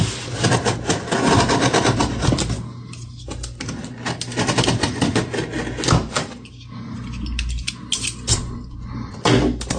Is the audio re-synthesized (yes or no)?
no